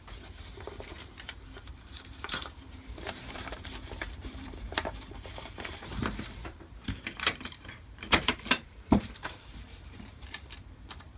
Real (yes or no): no